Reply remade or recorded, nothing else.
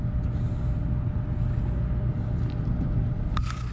recorded